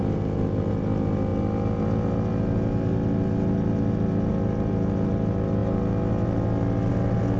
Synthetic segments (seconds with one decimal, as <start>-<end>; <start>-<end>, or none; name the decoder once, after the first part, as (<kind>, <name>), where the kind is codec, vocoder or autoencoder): none